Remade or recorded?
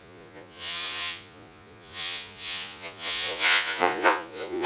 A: remade